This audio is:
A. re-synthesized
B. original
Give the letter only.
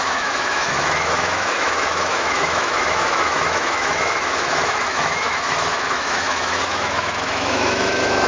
A